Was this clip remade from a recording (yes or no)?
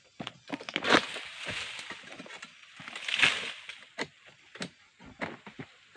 no